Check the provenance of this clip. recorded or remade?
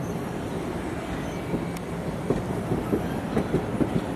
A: recorded